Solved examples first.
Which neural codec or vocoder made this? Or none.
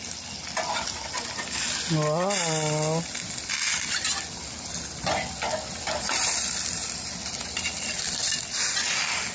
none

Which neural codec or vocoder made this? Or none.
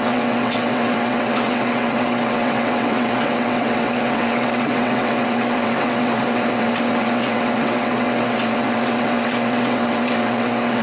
vocoder, WaveNeXt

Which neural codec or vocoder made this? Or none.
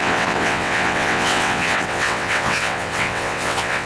vocoder, WaveNeXt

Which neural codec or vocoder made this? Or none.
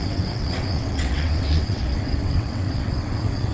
vocoder, WaveNeXt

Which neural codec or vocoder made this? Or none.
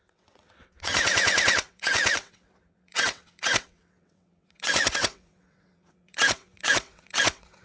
vocoder, WaveNeXt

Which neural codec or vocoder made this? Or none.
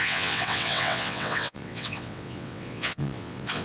vocoder, WaveNeXt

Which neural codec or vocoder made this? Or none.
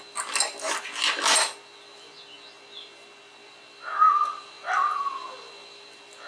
none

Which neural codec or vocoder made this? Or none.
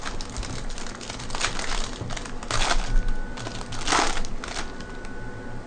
none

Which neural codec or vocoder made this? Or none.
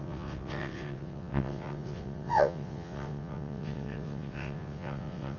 vocoder, WaveNeXt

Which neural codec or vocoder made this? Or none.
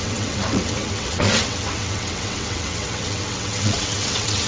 vocoder, WaveNeXt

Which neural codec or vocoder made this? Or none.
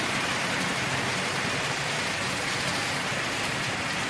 none